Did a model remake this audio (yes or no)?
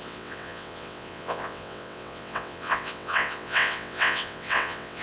yes